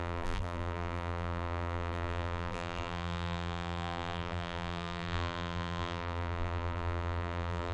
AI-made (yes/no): yes